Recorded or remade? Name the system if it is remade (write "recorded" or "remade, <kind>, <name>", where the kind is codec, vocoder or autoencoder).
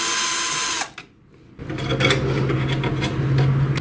recorded